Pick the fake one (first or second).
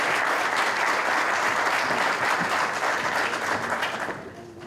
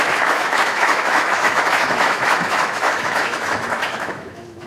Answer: second